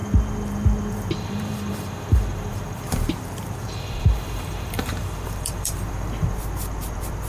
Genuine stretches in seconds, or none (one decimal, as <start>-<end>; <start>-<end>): none